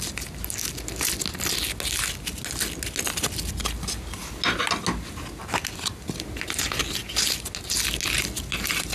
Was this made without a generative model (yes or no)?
yes